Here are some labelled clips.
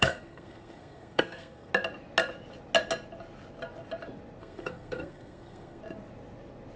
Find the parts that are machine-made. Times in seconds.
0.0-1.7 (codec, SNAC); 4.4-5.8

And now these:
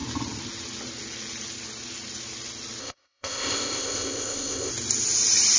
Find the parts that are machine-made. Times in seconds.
2.8-4.7 (codec, ZipCodec)

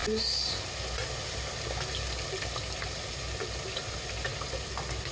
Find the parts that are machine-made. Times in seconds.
none

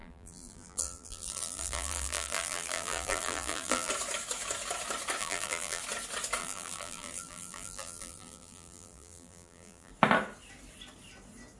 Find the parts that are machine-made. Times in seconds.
0.0-3.9 (vocoder, BigVGAN v2); 5.2-5.8; 6.4-9.9

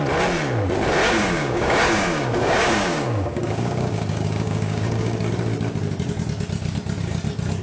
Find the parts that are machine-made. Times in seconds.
1.0-5.3 (codec, DAC)

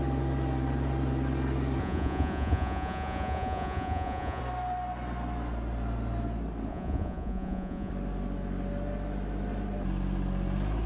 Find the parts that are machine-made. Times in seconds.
1.8-4.4 (vocoder, Vocos); 6.7-7.9

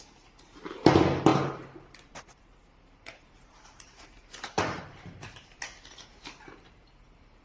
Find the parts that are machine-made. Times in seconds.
1.3-5.6 (vocoder, BigVGAN v2)

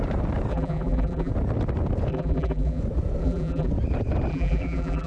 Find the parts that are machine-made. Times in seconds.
0.5-1.3 (vocoder, BigVGAN v2); 2.1-2.8; 3.2-3.7; 4.3-5.1